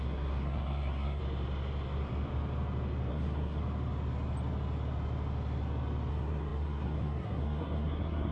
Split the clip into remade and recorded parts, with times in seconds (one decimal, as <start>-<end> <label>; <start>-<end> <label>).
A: 0.0-1.2 remade; 1.2-3.1 recorded; 3.1-3.6 remade; 3.6-6.1 recorded; 6.1-8.3 remade

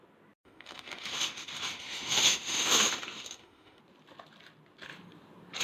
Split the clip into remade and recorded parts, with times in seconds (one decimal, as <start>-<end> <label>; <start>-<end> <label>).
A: 0.0-0.4 recorded; 0.4-3.8 remade; 3.8-5.6 recorded

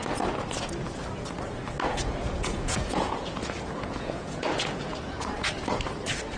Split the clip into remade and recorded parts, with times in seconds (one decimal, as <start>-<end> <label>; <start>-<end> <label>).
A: 0.0-1.9 recorded; 1.9-5.5 remade; 5.5-6.4 recorded

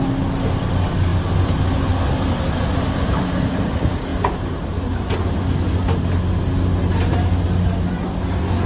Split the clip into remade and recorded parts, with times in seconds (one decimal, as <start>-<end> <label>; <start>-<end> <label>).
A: 0.0-8.7 recorded